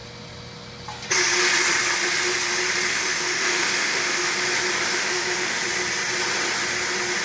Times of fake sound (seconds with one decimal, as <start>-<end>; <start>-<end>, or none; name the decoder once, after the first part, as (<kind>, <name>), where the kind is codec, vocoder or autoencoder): 2.9-4.3 (autoencoder, DAC-VAE); 4.9-5.6